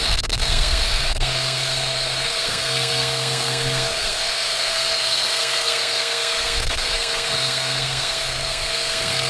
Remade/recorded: remade